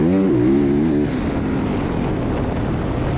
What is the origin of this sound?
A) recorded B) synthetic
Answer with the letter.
A